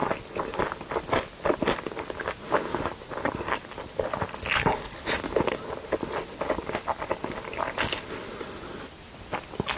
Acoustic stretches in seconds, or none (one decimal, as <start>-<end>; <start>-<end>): 0.0-9.8